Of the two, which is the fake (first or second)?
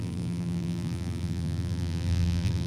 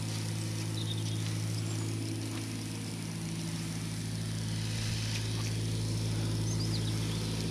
first